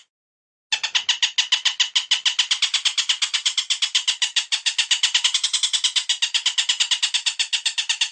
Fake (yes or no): no